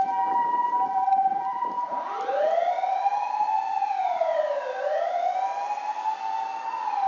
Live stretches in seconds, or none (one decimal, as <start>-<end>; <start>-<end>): 0.0-3.1; 4.5-7.1